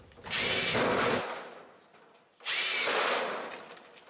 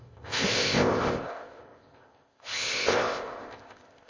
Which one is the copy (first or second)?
second